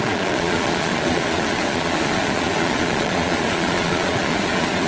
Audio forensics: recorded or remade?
remade